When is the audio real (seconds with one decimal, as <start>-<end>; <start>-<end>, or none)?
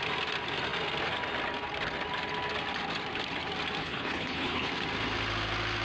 0.0-3.8; 4.7-5.8